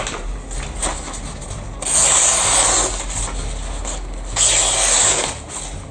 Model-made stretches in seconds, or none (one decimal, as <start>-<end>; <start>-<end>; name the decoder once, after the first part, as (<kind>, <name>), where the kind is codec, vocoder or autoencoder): none